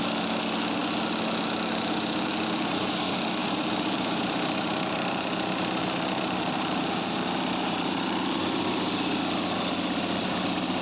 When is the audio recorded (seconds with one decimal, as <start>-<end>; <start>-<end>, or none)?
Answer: 0.0-3.4; 8.4-10.8